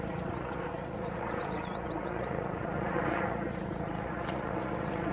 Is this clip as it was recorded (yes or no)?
no